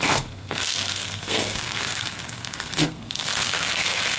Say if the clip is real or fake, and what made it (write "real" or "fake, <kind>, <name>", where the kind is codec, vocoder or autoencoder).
fake, codec, SNAC